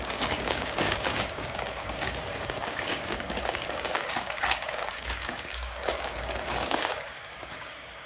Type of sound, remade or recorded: remade